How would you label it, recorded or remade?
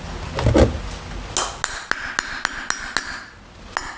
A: recorded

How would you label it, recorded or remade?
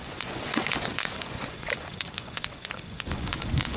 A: remade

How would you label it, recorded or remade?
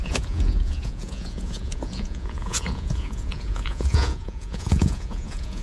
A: remade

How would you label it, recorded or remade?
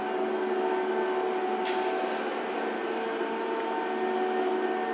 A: recorded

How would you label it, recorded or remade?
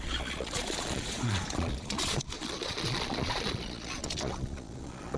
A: remade